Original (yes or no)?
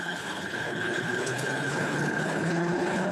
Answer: no